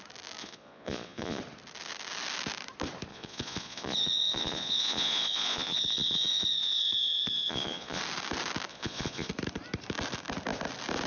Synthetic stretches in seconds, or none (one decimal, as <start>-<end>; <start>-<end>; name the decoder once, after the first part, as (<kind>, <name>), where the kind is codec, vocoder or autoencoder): 0.4-1.4 (vocoder, Vocos); 3.1-8.0; 8.7-9.3